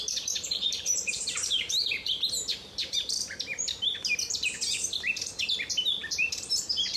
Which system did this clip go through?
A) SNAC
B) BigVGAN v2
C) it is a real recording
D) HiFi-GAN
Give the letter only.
B